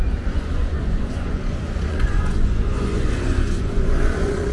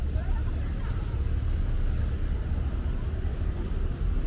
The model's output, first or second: first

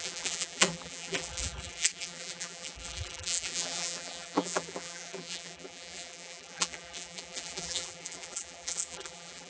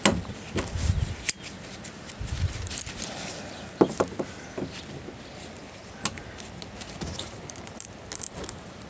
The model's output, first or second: first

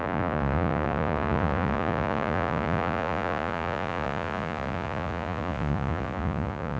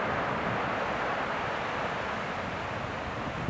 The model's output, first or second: first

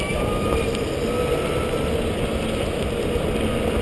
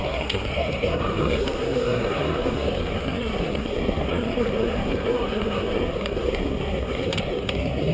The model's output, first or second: second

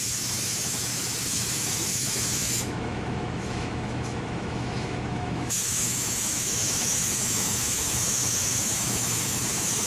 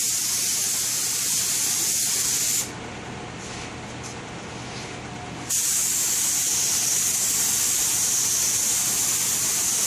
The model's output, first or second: first